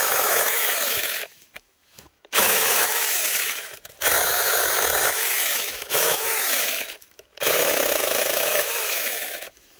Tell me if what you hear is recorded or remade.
remade